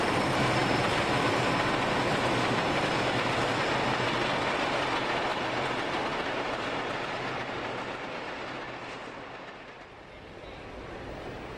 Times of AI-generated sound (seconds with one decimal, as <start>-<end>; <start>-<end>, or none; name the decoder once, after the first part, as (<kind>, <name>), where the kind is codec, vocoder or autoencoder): 0.6-3.7 (vocoder, BigVGAN v2)